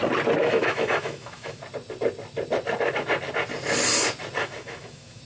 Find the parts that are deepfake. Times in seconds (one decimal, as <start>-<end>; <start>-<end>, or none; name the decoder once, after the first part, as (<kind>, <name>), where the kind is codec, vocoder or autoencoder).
0.4-1.6 (autoencoder, DAC-VAE); 4.4-5.2

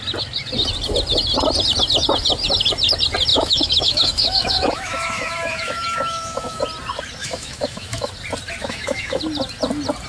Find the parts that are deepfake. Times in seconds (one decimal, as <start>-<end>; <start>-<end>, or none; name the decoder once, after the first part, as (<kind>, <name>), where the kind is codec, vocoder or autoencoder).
3.3-6.6 (autoencoder, DAC-VAE); 7.2-8.1; 8.6-9.2

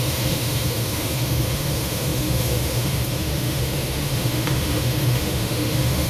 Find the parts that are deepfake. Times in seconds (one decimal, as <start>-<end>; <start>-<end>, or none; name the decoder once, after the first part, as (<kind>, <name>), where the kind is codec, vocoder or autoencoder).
0.0-6.1 (autoencoder, DAC-VAE)

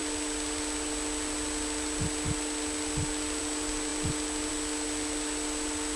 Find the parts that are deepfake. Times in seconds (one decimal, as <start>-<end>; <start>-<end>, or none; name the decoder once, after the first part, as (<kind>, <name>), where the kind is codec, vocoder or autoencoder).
none

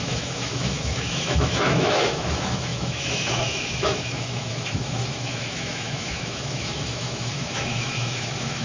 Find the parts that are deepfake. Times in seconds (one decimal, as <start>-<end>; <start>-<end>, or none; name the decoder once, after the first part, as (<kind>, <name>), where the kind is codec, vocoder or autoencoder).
0.0-8.6 (autoencoder, DAC-VAE)

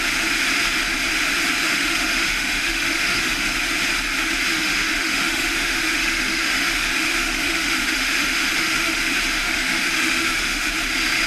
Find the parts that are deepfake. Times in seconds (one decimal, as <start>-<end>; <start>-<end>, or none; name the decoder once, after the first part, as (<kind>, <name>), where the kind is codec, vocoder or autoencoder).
1.6-3.5 (autoencoder, DAC-VAE); 4.5-9.0; 9.4-10.7

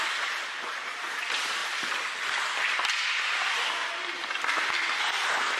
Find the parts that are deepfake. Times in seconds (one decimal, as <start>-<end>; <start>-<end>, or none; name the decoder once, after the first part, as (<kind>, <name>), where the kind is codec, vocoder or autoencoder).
none

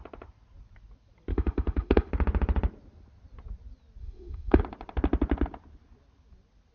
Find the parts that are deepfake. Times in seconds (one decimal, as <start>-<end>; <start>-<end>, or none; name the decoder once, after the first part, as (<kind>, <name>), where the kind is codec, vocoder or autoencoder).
1.3-2.1 (autoencoder, DAC-VAE); 4.0-4.6